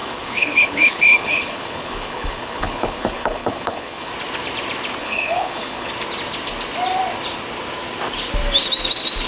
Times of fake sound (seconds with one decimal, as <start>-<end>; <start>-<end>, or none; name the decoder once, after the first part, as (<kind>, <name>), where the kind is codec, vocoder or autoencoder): 0.0-4.1 (codec, HILCodec); 5.0-5.9